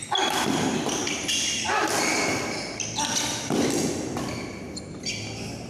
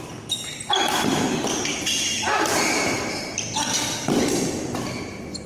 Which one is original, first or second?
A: first